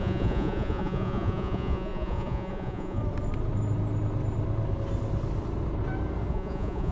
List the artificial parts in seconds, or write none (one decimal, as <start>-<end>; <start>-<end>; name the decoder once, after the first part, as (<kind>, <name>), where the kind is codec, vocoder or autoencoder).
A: 0.0-3.0 (vocoder, Vocos); 6.3-6.9